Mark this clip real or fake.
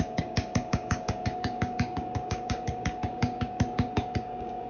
fake